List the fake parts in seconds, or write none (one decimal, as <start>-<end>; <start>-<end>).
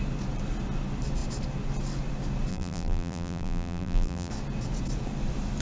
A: 2.5-4.3